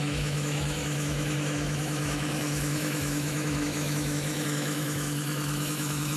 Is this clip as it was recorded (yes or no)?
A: no